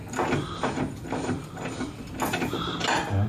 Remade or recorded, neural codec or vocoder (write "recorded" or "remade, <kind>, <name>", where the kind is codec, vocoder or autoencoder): recorded